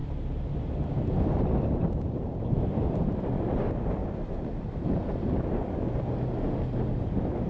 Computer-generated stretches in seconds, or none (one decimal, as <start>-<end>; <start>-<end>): none